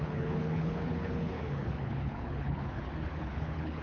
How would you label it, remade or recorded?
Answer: remade